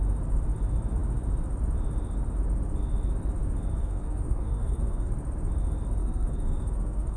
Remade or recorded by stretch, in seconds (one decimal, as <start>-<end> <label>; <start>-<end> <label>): 0.0-3.8 recorded; 3.8-5.1 remade; 5.1-6.0 recorded; 6.0-7.2 remade